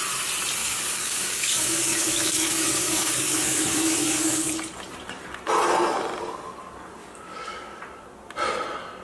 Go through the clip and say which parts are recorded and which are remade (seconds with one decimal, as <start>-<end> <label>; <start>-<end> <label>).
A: 0.0-0.6 recorded; 0.6-4.5 remade; 4.5-7.0 recorded; 7.0-7.8 remade; 7.8-9.0 recorded